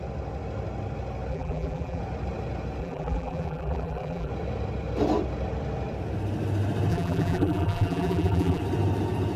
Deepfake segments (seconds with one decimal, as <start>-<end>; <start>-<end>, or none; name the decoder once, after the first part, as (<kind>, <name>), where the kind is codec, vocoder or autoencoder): 1.3-2.0 (vocoder, BigVGAN v2); 2.8-4.3; 6.9-8.6